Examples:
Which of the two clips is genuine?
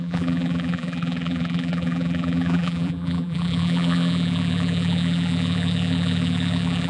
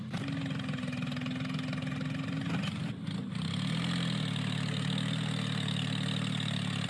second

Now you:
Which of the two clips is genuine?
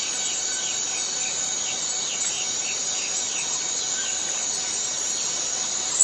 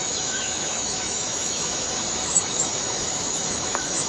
first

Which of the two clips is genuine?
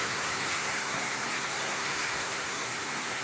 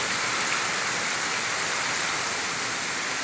second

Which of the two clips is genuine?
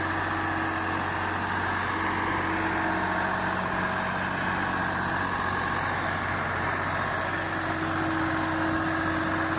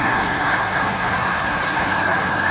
first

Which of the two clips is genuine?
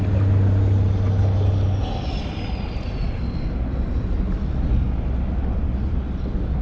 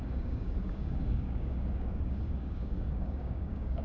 first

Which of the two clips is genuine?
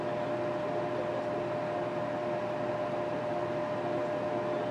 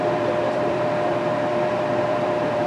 first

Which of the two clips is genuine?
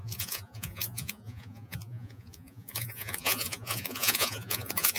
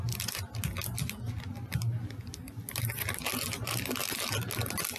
second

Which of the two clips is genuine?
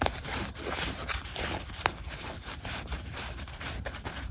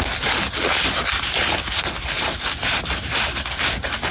second